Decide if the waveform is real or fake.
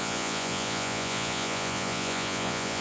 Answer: fake